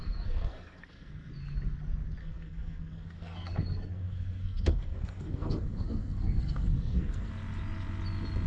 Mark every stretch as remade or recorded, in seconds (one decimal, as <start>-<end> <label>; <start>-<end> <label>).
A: 0.0-1.3 remade; 1.3-2.2 recorded; 2.2-7.3 remade; 7.3-8.5 recorded